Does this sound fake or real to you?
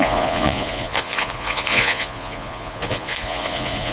fake